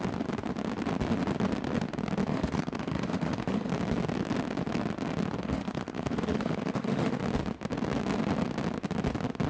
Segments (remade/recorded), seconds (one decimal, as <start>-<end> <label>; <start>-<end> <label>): 0.0-2.3 recorded; 2.3-3.7 remade; 3.7-5.4 recorded; 5.4-7.2 remade; 7.2-9.5 recorded